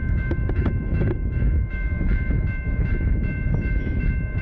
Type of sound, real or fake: fake